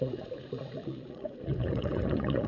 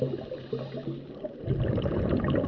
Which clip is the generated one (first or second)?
first